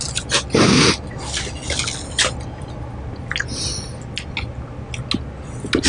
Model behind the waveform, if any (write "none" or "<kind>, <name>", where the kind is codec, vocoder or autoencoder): none